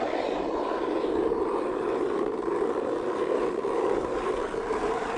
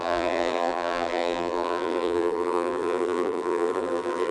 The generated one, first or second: second